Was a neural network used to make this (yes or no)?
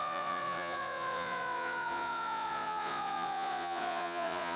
yes